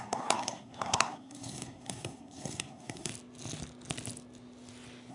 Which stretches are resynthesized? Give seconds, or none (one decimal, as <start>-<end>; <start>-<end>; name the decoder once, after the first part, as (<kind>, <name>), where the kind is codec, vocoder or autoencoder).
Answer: 0.0-3.1 (codec, SNAC)

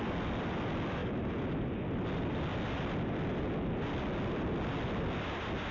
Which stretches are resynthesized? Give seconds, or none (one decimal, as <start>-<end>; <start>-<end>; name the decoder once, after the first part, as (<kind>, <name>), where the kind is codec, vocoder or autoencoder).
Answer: none

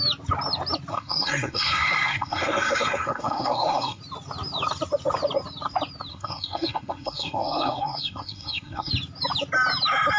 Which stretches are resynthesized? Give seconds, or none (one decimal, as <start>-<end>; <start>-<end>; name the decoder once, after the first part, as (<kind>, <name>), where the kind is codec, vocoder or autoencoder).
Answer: 0.9-4.0 (codec, SNAC); 6.1-8.9

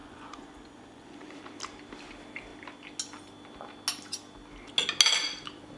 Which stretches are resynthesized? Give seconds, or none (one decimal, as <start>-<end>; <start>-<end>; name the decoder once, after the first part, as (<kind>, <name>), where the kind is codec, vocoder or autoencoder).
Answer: 0.0-1.4 (vocoder, Vocos)

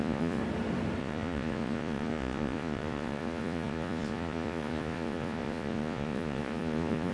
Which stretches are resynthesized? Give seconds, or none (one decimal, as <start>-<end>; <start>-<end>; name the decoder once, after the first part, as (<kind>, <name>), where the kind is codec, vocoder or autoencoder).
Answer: 0.0-0.4 (vocoder, Vocos); 1.0-7.1

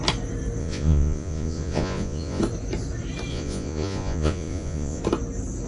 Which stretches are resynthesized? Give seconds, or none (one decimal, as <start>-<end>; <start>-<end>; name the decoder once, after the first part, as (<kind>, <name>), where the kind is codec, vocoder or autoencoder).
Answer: 0.6-2.4 (vocoder, Vocos); 3.3-5.0

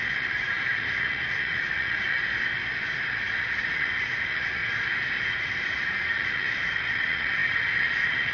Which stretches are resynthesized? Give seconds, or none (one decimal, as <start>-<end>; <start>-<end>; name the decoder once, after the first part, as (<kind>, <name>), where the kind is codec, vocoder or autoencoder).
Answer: 0.0-2.2 (vocoder, Vocos); 3.1-4.6; 5.4-8.3